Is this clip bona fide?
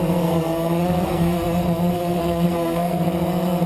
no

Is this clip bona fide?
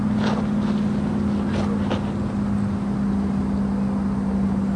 yes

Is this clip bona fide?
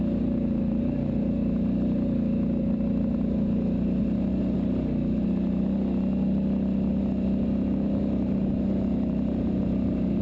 yes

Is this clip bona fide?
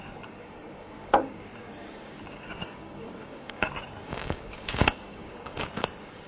no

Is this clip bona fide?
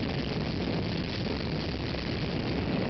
yes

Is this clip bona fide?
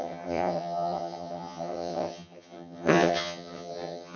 no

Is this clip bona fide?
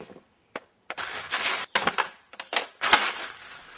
yes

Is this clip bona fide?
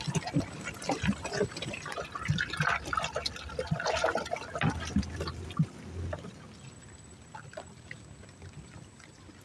yes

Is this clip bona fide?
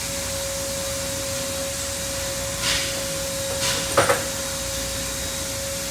yes